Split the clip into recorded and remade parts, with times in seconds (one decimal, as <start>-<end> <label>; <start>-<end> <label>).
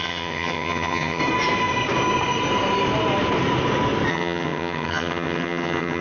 0.0-1.2 remade; 1.2-4.1 recorded; 4.1-6.0 remade